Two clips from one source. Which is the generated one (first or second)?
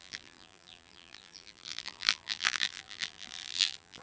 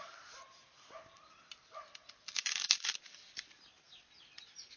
first